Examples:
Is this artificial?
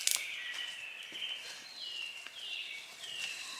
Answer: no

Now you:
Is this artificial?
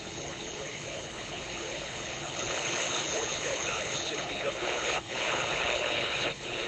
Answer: yes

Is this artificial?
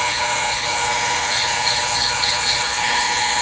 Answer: yes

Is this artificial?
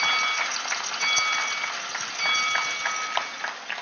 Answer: no